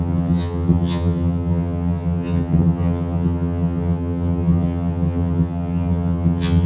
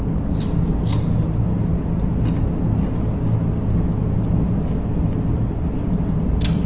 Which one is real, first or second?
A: second